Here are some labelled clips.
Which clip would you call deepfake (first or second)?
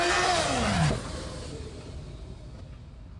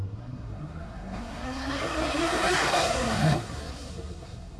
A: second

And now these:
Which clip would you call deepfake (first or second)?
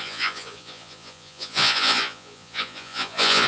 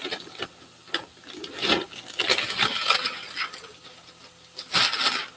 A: first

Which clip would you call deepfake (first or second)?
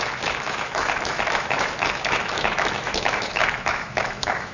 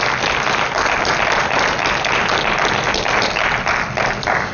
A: first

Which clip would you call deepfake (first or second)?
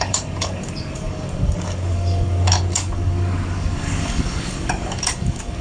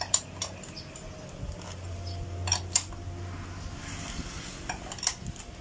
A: first